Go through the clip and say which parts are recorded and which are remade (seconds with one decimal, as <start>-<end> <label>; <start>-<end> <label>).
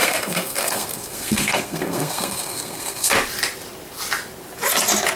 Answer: 0.0-3.1 remade; 3.1-5.2 recorded